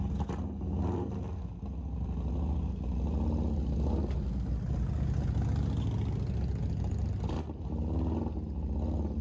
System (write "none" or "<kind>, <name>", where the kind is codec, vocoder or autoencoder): none